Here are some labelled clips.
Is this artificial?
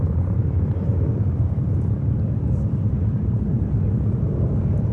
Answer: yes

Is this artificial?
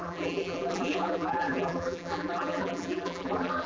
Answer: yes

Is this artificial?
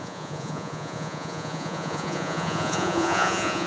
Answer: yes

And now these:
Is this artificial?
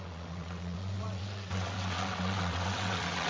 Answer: yes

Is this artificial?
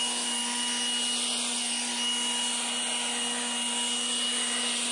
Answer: no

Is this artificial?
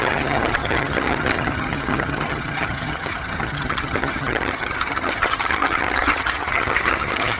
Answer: yes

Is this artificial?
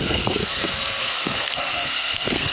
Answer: yes